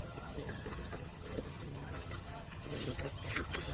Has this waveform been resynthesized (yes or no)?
yes